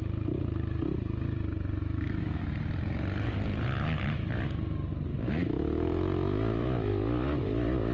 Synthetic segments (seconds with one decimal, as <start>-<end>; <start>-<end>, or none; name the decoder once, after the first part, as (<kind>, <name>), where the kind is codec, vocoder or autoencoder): 1.8-2.4 (autoencoder, DAC-VAE); 5.1-6.9

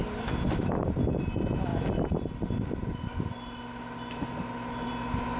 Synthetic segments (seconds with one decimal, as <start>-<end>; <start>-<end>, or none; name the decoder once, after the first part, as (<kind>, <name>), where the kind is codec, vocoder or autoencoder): none

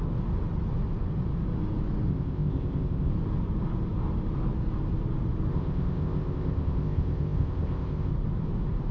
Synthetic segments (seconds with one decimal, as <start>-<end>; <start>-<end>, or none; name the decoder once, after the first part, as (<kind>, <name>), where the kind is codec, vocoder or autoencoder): 2.1-3.1 (codec, ZipCodec); 5.5-8.1

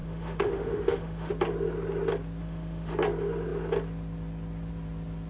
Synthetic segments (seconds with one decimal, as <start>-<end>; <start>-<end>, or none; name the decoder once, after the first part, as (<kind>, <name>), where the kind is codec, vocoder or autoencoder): 0.0-1.3 (autoencoder, DAC-VAE); 2.4-2.9